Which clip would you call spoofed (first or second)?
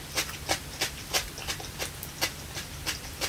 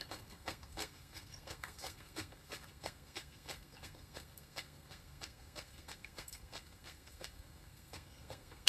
second